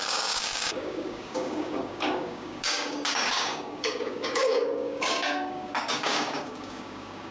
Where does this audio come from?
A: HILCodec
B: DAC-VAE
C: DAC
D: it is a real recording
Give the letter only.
C